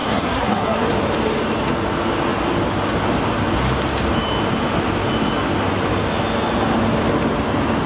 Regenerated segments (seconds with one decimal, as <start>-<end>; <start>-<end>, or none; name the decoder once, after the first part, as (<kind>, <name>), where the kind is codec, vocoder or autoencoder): 0.0-0.9 (codec, SNAC)